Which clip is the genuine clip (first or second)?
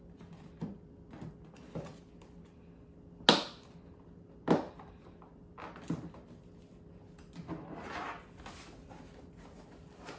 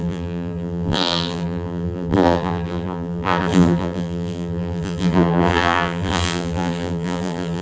first